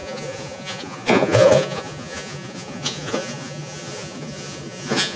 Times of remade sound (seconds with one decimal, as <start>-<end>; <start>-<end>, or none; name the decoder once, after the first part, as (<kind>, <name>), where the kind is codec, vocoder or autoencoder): 0.0-5.2 (vocoder, Vocos)